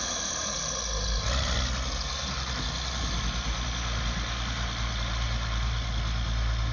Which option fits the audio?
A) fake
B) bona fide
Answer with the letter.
B